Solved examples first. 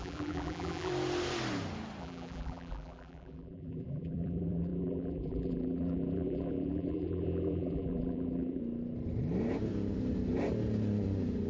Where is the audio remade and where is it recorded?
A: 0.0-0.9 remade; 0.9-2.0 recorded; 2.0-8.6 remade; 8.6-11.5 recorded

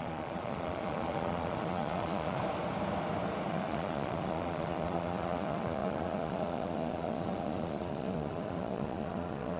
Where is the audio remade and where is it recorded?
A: 0.0-2.4 remade; 2.4-3.5 recorded; 3.5-9.6 remade

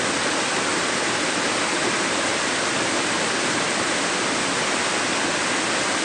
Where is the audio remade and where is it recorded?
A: 0.0-0.7 recorded; 0.7-3.3 remade; 3.3-6.0 recorded

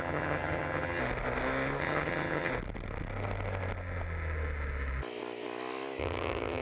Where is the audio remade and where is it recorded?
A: 0.0-1.0 remade; 1.0-1.8 recorded; 1.8-2.5 remade; 2.5-6.0 recorded; 6.0-6.6 remade

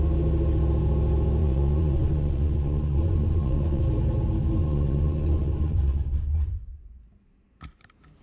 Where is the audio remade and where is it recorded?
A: 0.0-1.4 recorded; 1.4-3.8 remade; 3.8-4.6 recorded; 4.6-7.0 remade; 7.0-8.2 recorded